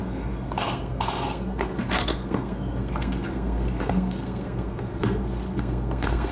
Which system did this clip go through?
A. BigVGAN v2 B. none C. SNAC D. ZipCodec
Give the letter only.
C